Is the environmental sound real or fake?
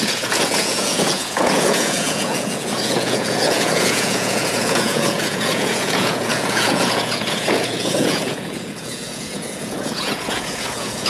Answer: fake